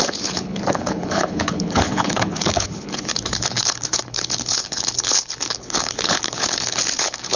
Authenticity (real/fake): fake